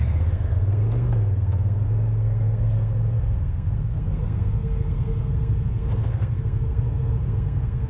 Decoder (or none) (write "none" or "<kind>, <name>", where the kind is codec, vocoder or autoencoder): codec, SNAC